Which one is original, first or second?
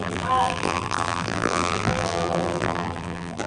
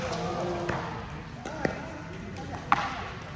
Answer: second